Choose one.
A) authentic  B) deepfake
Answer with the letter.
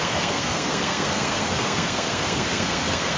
B